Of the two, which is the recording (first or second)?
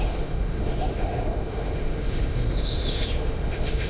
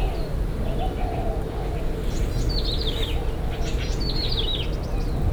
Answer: second